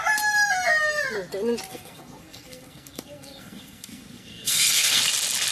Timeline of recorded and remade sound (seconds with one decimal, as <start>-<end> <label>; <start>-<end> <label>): 0.0-1.7 recorded; 1.7-5.0 remade; 5.0-5.5 recorded